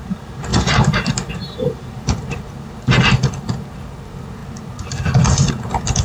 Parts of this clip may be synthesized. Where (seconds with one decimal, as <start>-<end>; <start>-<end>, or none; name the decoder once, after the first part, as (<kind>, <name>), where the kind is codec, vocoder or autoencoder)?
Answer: 0.5-2.5 (vocoder, BigVGAN v2)